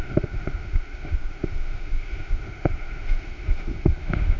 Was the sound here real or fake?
fake